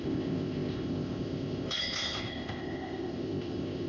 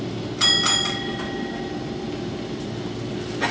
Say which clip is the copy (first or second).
first